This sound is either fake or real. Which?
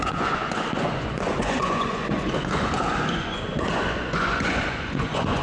fake